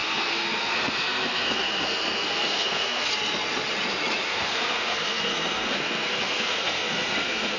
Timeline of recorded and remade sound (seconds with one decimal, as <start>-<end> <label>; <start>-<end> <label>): 0.0-3.1 remade; 3.1-4.3 recorded; 4.3-7.6 remade